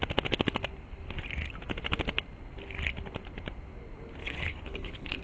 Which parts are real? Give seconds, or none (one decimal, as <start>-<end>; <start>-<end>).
0.0-4.2